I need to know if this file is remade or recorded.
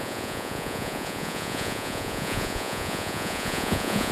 remade